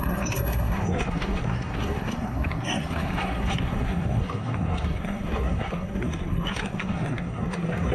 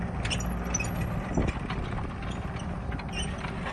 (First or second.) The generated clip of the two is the first